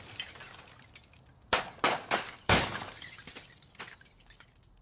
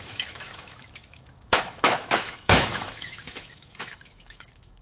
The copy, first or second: second